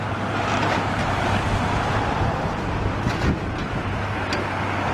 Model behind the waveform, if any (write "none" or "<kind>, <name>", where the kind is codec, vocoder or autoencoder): none